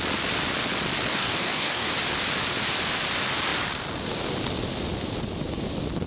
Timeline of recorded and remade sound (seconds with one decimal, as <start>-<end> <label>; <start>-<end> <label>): 0.0-1.1 recorded; 1.1-1.9 remade; 1.9-6.1 recorded